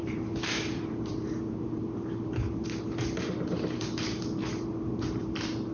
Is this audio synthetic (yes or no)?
yes